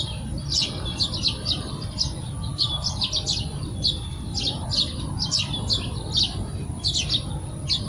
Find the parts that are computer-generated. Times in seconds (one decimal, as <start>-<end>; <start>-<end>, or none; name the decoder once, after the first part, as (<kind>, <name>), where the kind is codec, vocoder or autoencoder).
none